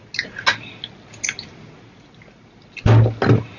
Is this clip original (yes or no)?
yes